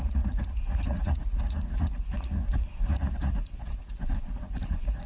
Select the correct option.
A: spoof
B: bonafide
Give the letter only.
A